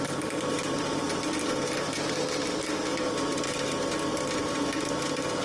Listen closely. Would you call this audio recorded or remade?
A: remade